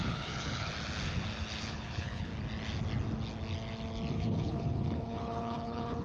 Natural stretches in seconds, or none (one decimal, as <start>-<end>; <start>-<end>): 0.7-1.7; 2.3-4.1

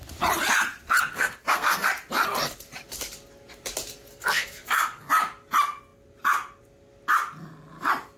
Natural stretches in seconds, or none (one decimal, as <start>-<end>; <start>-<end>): 0.0-1.1; 1.9-4.1; 5.1-8.2

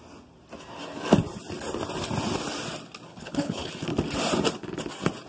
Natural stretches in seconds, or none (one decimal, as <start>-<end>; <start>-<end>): 0.0-3.1; 3.7-5.3

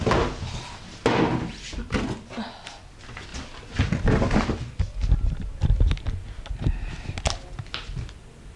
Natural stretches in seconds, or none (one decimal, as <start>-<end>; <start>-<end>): 0.0-8.6

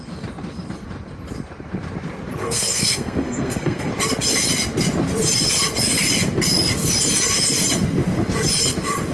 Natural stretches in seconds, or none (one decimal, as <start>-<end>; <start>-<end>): 0.0-2.4; 3.9-9.1

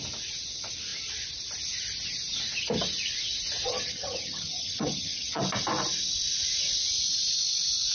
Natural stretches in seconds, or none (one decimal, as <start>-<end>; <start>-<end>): 0.0-3.7; 5.4-7.9